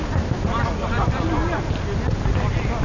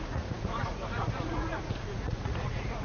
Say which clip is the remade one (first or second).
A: second